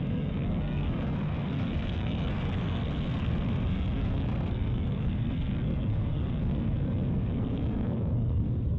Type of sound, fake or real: fake